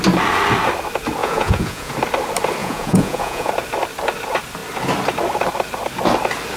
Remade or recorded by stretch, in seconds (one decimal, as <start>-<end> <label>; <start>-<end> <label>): 0.0-1.2 recorded; 1.2-1.9 remade; 1.9-2.6 recorded; 2.6-3.5 remade; 3.5-6.6 recorded